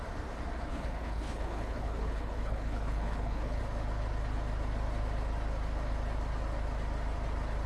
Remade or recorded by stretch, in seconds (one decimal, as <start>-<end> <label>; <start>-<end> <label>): 0.0-0.7 recorded; 0.7-3.6 remade; 3.6-7.7 recorded